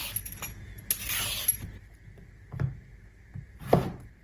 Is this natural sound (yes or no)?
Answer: yes